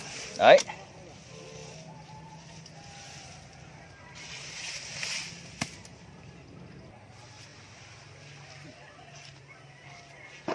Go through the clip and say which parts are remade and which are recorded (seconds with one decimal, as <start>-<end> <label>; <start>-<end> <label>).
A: 0.0-10.5 recorded

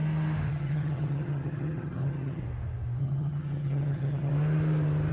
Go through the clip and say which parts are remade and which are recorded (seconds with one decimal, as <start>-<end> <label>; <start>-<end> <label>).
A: 0.0-0.5 recorded; 0.5-2.4 remade; 2.4-3.0 recorded; 3.0-4.3 remade; 4.3-5.1 recorded

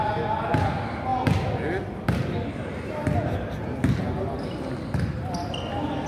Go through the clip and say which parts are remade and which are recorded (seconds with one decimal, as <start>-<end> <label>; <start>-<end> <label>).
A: 0.0-6.1 recorded

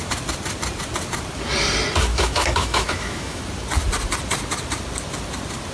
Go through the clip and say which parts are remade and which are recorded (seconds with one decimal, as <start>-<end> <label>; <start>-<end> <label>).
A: 0.0-2.1 recorded; 2.1-3.4 remade; 3.4-5.7 recorded

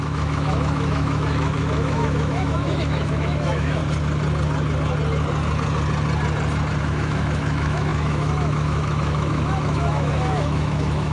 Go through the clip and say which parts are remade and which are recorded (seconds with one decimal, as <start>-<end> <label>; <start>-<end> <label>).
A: 0.0-3.8 remade; 3.8-6.8 recorded; 6.8-11.1 remade

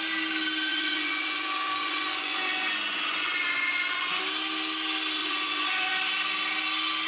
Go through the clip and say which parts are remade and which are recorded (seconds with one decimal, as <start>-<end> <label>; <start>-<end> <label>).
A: 0.0-0.7 recorded; 0.7-4.2 remade; 4.2-5.2 recorded; 5.2-5.9 remade; 5.9-7.1 recorded

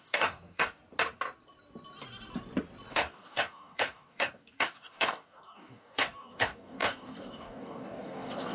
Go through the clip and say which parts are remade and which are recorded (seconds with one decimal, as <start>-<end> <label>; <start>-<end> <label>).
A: 0.0-0.8 remade; 0.8-2.9 recorded; 2.9-8.5 remade